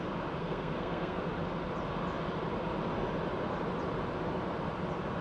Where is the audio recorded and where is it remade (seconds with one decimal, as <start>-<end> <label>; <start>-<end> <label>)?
0.0-0.4 recorded; 0.4-1.2 remade; 1.2-5.2 recorded

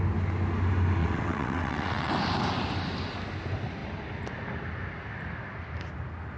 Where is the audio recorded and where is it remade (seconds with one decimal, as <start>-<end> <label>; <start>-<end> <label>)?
0.0-1.0 recorded; 1.0-2.1 remade; 2.1-6.4 recorded

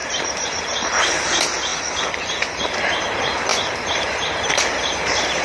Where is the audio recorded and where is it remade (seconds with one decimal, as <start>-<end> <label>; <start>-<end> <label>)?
0.0-1.7 remade; 1.7-2.5 recorded; 2.5-5.4 remade

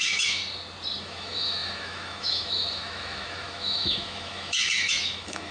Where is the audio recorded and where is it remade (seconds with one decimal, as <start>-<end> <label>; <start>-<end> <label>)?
0.0-0.4 remade; 0.4-1.0 recorded; 1.0-5.5 remade

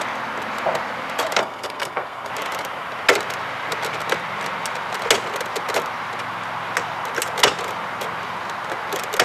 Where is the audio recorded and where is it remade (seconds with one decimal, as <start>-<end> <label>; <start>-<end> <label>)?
0.0-1.4 recorded; 1.4-2.3 remade; 2.3-9.2 recorded

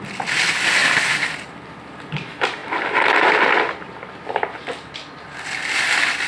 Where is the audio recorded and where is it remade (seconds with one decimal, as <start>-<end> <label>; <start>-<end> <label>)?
0.0-6.3 recorded

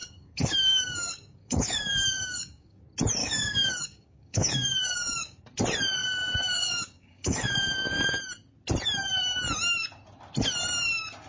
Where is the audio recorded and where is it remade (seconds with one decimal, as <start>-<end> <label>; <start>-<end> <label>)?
0.0-2.8 remade; 2.8-3.2 recorded; 3.2-5.4 remade; 5.4-6.0 recorded; 6.0-8.1 remade; 8.1-11.3 recorded